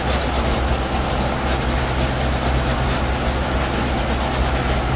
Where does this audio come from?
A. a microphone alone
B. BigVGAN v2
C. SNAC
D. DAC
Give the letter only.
A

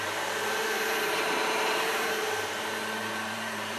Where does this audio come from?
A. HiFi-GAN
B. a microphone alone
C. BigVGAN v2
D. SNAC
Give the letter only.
C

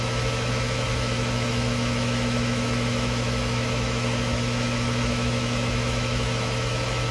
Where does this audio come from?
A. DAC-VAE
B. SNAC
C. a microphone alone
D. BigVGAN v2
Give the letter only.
A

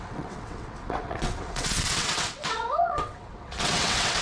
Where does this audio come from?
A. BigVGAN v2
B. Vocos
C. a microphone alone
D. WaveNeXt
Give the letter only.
D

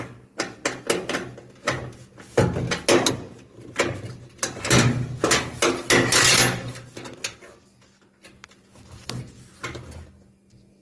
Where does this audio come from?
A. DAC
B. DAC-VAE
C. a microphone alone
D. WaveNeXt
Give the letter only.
C